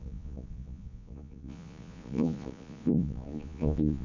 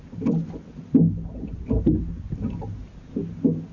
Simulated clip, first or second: first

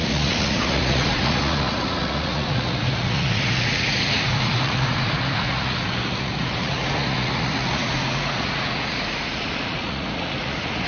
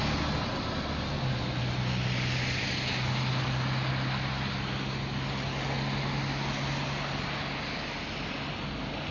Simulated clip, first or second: first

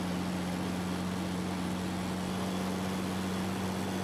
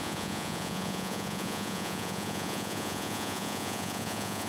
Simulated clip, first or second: second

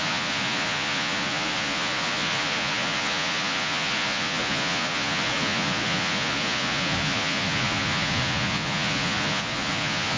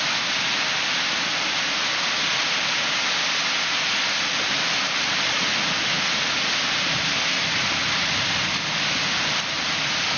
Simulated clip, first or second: first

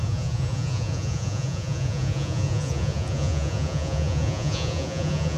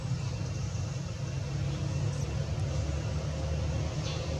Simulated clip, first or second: first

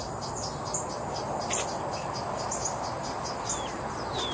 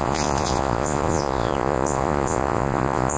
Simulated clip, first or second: second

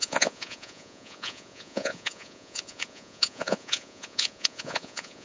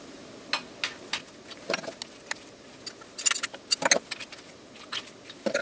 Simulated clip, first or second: first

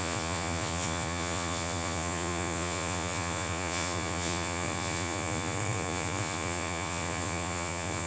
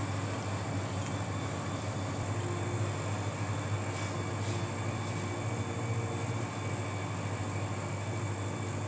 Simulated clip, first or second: first